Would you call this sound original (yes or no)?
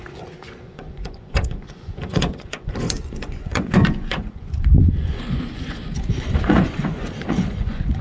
no